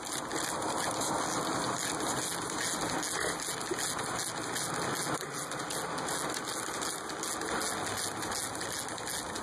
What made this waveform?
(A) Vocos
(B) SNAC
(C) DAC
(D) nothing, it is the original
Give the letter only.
D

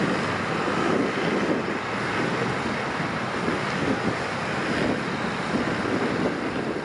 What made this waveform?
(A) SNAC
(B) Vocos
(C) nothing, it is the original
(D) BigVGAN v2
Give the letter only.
C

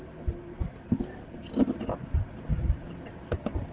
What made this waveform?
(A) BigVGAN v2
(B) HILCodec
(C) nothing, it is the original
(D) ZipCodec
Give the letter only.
C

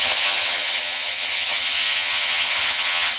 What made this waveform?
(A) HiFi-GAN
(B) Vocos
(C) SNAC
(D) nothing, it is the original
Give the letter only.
A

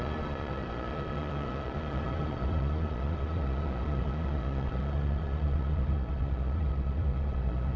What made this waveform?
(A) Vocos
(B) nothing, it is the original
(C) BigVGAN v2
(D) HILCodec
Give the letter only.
A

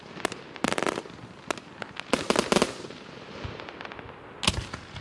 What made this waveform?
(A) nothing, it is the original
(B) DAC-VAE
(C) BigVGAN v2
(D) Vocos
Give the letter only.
A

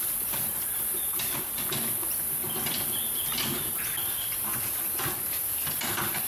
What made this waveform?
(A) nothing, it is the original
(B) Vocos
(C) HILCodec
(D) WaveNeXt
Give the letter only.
A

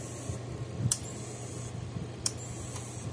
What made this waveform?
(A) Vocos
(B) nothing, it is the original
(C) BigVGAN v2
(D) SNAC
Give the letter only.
B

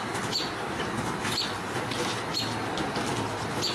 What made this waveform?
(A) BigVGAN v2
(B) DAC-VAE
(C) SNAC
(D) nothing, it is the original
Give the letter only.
D